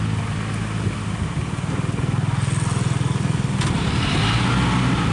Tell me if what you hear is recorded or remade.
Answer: recorded